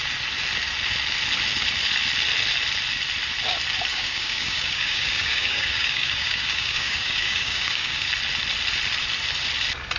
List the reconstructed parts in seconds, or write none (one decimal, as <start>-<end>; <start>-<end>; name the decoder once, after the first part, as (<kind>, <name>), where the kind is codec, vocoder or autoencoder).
3.9-8.1 (codec, DAC)